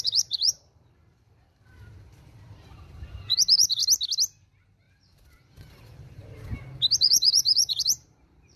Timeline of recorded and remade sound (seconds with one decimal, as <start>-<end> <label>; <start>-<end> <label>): 0.0-3.8 remade; 3.8-4.8 recorded; 4.8-6.2 remade; 6.2-7.0 recorded; 7.0-8.6 remade